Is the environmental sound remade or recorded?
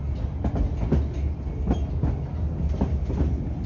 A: recorded